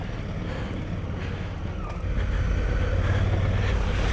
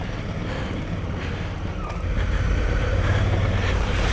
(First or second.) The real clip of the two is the first